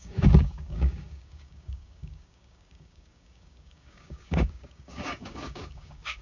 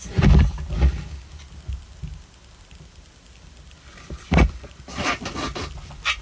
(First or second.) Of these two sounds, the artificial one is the first